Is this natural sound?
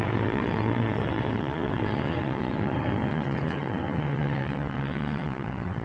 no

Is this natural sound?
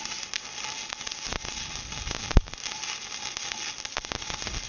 yes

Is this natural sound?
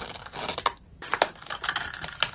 yes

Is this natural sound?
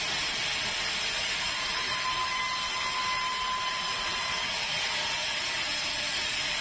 yes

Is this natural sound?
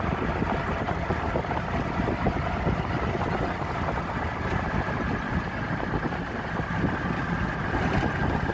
yes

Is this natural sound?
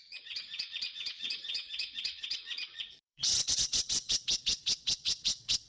no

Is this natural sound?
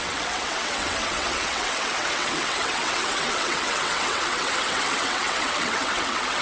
no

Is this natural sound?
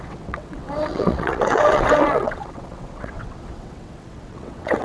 no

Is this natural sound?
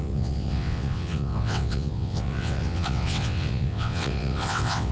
no